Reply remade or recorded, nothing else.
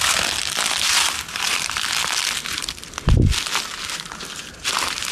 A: recorded